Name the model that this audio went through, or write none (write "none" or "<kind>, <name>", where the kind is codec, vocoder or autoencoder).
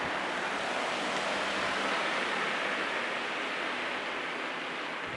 none